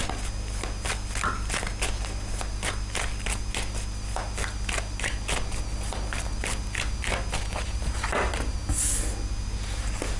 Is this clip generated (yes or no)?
no